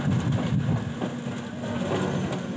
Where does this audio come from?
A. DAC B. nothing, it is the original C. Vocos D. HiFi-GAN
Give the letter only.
B